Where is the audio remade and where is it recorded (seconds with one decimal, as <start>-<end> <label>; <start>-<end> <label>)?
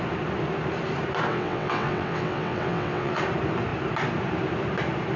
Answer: 0.0-1.3 recorded; 1.3-3.2 remade; 3.2-5.2 recorded